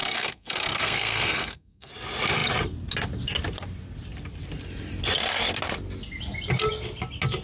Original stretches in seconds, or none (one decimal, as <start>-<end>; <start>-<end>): 1.9-7.4

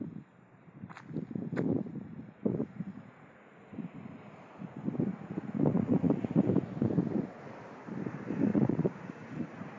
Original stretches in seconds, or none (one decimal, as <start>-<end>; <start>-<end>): 0.0-1.7; 3.9-5.1; 6.4-8.5

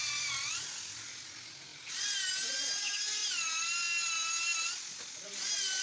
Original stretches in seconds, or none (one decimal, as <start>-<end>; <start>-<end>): 0.0-5.8